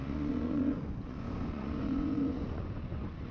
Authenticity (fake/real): fake